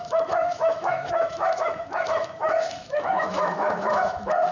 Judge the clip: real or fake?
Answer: fake